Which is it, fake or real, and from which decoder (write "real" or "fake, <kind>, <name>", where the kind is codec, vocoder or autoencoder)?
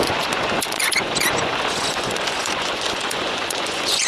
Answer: fake, vocoder, Vocos